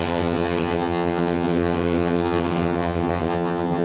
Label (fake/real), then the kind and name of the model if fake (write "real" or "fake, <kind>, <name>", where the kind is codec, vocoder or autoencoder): fake, vocoder, HiFi-GAN